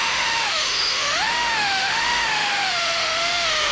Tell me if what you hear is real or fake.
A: fake